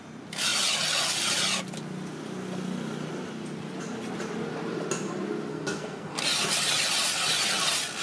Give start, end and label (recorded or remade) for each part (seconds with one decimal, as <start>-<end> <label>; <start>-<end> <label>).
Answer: 0.0-5.5 recorded; 5.5-6.2 remade; 6.2-8.0 recorded